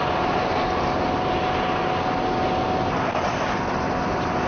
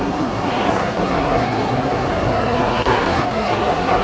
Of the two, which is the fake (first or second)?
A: second